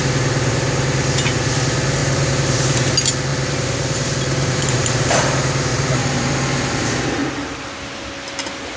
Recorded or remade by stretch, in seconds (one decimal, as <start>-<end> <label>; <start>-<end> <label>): 0.0-2.0 recorded; 2.0-2.9 remade; 2.9-3.3 recorded; 3.3-5.1 remade; 5.1-5.7 recorded; 5.7-6.3 remade; 6.3-7.2 recorded; 7.2-7.7 remade; 7.7-8.8 recorded